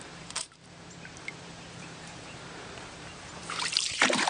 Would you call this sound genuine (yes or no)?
no